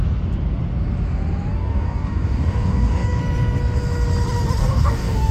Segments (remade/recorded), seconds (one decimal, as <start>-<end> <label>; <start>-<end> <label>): 0.0-1.5 recorded; 1.5-3.2 remade; 3.2-4.6 recorded; 4.6-5.3 remade